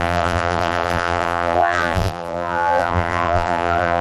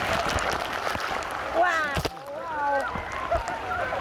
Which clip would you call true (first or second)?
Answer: second